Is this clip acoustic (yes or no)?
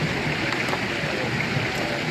yes